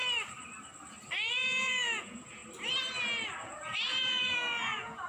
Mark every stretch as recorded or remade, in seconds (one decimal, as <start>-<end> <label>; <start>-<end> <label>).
0.0-1.3 recorded; 1.3-2.4 remade; 2.4-3.4 recorded; 3.4-5.1 remade